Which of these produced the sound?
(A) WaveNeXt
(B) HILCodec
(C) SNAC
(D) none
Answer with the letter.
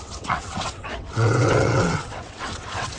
A